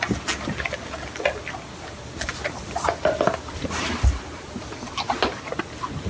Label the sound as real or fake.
real